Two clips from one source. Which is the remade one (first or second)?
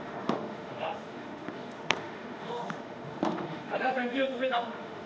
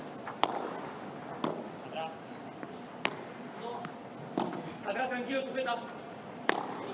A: first